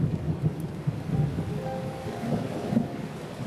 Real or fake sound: fake